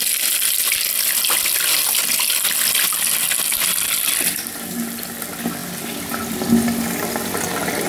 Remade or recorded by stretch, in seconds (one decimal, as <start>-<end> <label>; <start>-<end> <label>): 0.0-7.9 recorded